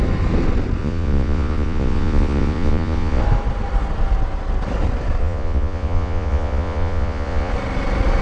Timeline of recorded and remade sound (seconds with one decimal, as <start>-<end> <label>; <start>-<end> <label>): 0.0-0.8 recorded; 0.8-3.2 remade; 3.2-5.2 recorded; 5.2-7.5 remade; 7.5-8.2 recorded

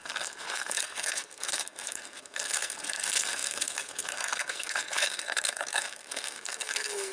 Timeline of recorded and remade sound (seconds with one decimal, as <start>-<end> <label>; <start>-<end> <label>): 0.0-7.1 remade

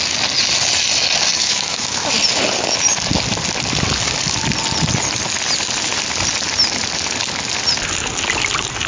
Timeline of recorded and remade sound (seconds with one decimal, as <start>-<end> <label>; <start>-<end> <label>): 0.0-1.4 recorded; 1.4-2.1 remade; 2.1-8.9 recorded

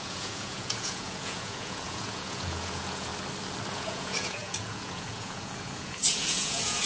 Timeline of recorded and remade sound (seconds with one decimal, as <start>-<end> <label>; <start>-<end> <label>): 0.0-3.1 remade; 3.1-3.7 recorded; 3.7-6.9 remade

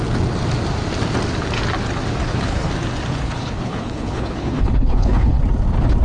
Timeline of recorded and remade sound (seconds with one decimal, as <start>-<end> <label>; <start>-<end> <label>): 0.0-2.2 recorded; 2.2-2.7 remade; 2.7-3.1 recorded; 3.1-5.4 remade; 5.4-6.0 recorded

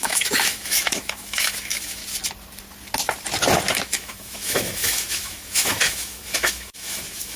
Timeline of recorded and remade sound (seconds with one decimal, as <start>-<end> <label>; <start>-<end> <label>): 0.0-2.0 remade; 2.0-3.7 recorded; 3.7-7.4 remade

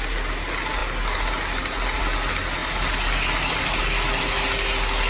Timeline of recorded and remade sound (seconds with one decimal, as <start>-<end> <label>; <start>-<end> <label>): 0.0-5.1 recorded